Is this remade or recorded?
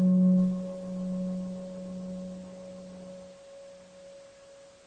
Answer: recorded